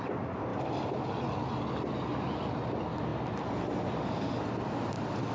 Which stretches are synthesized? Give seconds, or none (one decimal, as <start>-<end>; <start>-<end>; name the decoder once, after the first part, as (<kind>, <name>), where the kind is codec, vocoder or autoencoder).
none